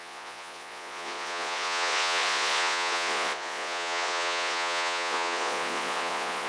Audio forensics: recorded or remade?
remade